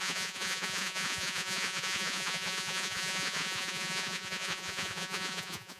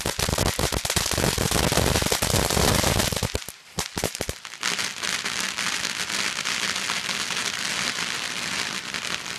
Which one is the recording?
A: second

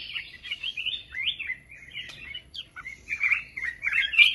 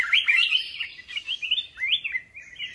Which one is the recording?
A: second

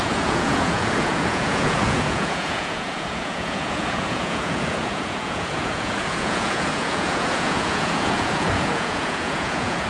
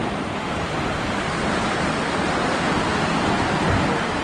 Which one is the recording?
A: second